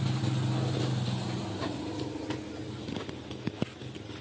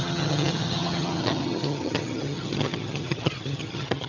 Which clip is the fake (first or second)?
second